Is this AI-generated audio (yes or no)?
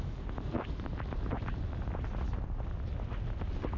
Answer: no